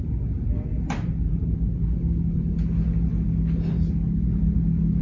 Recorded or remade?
recorded